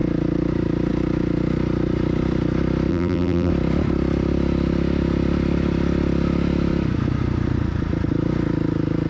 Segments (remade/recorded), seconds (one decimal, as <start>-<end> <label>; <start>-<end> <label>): 0.0-2.9 recorded; 2.9-3.5 remade; 3.5-9.1 recorded